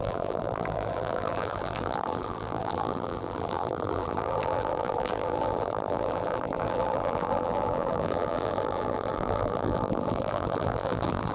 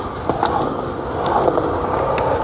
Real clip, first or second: second